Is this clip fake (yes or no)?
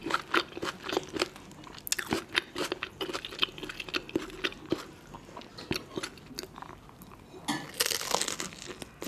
no